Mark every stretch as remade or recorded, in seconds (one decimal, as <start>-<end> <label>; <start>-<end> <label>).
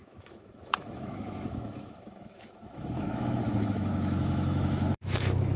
0.0-5.6 remade